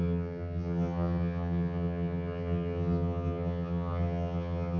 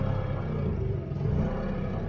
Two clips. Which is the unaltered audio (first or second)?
second